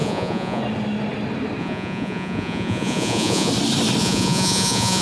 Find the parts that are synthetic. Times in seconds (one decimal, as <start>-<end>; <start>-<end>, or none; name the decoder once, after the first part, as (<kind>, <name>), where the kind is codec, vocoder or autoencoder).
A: 0.0-0.6 (vocoder, Vocos); 1.6-3.5; 4.0-5.0